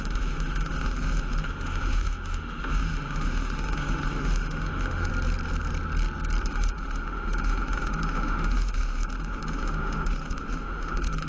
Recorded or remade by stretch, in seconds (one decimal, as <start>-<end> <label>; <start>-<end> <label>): 0.0-5.1 remade; 5.1-6.4 recorded; 6.4-11.3 remade